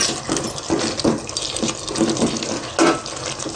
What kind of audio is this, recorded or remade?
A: recorded